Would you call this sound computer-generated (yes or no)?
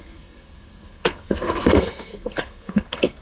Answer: yes